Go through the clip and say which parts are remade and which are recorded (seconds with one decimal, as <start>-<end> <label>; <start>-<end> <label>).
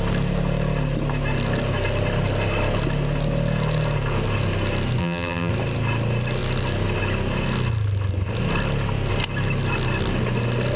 0.0-5.0 recorded; 5.0-5.5 remade; 5.5-10.8 recorded